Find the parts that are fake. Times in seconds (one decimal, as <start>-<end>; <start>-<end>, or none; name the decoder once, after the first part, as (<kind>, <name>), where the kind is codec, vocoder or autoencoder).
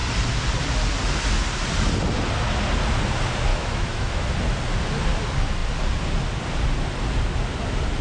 3.5-4.3 (autoencoder, DAC-VAE)